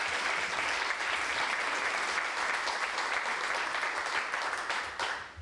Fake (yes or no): no